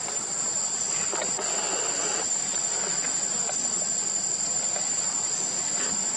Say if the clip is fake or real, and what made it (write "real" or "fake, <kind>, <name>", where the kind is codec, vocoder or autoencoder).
real